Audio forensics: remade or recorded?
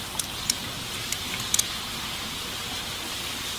recorded